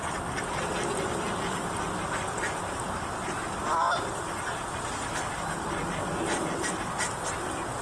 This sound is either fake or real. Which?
real